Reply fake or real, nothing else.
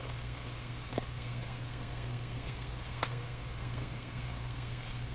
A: fake